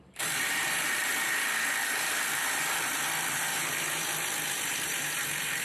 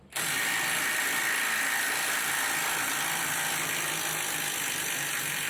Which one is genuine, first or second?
second